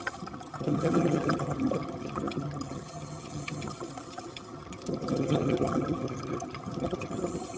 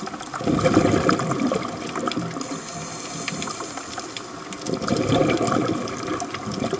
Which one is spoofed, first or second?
first